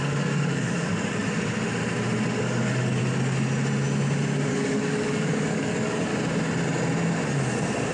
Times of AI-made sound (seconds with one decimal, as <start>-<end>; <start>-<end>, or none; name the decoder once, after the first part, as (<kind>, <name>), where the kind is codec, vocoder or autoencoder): 0.0-1.2 (codec, DAC); 2.4-3.0; 4.5-6.1